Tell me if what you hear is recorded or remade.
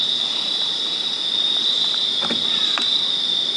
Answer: recorded